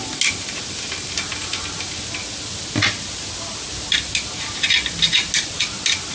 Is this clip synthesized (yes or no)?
no